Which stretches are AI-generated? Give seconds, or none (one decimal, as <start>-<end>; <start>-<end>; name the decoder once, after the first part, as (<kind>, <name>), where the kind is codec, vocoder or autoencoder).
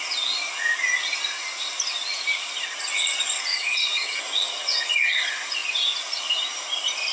3.5-4.2 (vocoder, HiFi-GAN)